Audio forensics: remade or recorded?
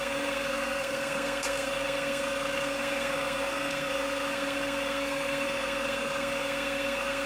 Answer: remade